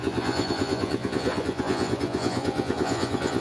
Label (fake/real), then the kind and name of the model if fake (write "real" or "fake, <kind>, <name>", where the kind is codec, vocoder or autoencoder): fake, vocoder, Vocos